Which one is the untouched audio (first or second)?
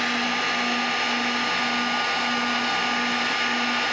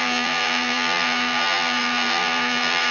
first